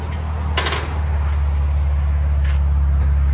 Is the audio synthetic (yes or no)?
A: no